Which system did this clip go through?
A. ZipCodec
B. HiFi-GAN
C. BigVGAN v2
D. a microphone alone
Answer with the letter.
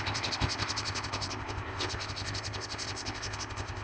A